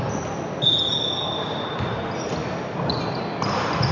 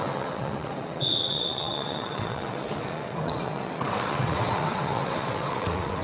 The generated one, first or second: second